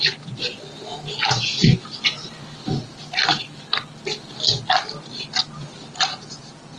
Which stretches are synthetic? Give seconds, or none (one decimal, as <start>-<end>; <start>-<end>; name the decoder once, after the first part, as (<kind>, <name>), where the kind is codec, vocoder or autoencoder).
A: none